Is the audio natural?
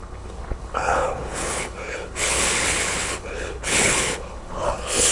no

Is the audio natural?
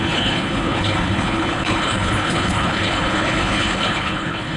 no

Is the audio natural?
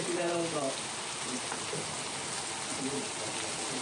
yes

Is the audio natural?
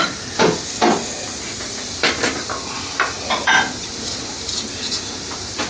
yes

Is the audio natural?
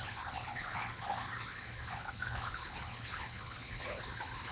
no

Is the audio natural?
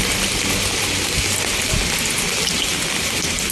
yes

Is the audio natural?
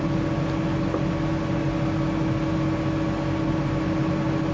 yes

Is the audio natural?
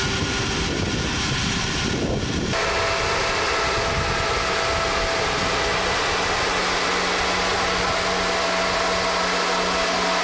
yes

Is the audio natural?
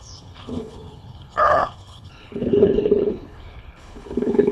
no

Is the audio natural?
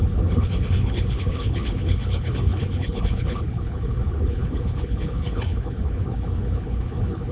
no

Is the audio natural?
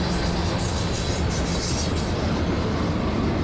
yes